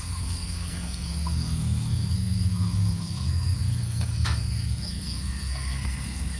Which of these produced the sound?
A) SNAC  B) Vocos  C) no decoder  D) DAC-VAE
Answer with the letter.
A